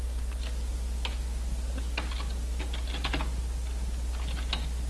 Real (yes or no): yes